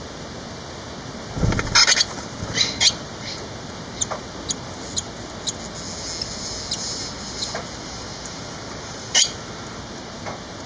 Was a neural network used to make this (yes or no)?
no